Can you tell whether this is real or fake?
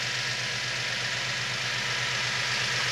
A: real